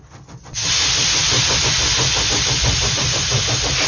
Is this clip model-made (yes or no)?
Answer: no